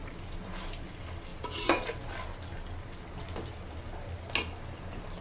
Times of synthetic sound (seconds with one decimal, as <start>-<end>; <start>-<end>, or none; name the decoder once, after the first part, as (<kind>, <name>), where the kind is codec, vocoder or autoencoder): 1.3-2.1 (vocoder, BigVGAN v2)